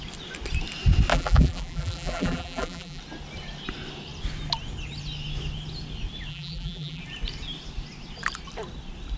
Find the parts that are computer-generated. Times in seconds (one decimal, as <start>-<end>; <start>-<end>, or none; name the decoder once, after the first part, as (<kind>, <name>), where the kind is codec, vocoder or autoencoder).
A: 1.1-3.0 (vocoder, BigVGAN v2); 6.3-7.0